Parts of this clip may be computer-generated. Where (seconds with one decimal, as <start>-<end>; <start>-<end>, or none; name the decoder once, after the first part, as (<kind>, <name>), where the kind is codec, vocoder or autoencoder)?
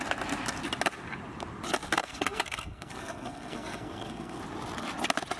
2.0-4.4 (codec, SNAC)